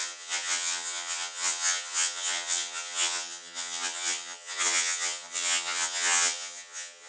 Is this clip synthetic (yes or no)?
yes